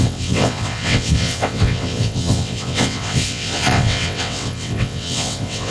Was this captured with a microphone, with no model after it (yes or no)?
no